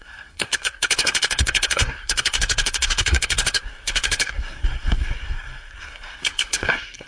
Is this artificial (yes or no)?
yes